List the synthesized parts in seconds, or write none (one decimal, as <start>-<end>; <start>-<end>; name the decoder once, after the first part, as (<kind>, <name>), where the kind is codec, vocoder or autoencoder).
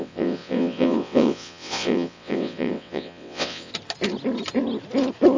0.0-3.7 (vocoder, WaveNeXt)